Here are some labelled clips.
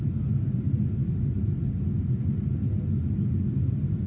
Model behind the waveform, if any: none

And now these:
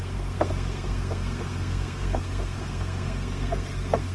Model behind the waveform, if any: codec, SNAC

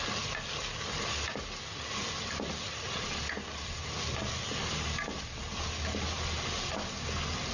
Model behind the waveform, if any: none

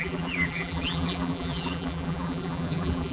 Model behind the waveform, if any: vocoder, BigVGAN v2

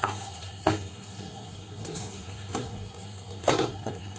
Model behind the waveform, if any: codec, SNAC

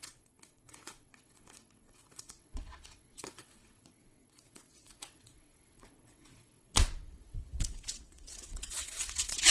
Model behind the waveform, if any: vocoder, WaveNeXt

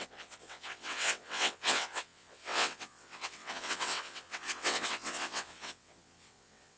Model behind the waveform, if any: vocoder, WaveNeXt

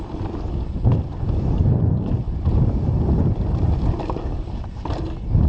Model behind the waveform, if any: none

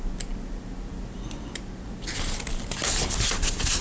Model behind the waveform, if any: none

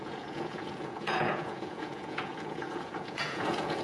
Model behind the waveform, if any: vocoder, Vocos